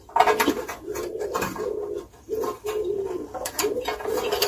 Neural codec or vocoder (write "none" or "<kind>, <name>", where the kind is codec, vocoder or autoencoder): vocoder, BigVGAN v2